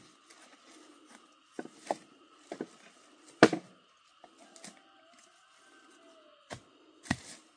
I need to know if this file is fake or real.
real